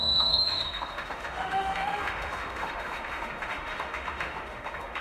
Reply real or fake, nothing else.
fake